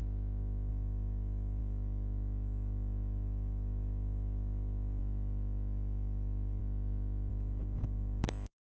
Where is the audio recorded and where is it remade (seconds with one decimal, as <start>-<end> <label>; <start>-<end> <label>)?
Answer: 0.0-0.7 recorded; 0.7-6.6 remade; 6.6-7.3 recorded; 7.3-8.6 remade